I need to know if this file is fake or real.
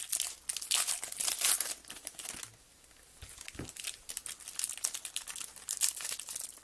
real